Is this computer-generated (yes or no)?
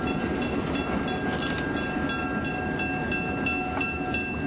no